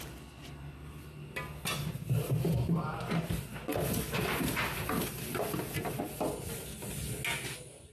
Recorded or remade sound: recorded